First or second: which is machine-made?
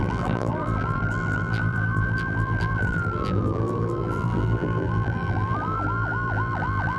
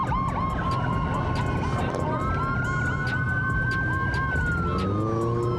first